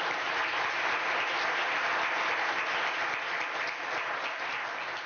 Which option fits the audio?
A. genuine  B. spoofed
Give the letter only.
A